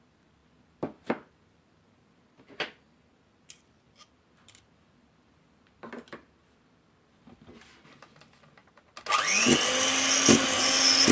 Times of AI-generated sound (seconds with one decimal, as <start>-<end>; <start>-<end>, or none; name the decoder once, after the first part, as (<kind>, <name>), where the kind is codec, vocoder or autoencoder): none